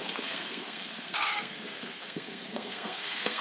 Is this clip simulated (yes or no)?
yes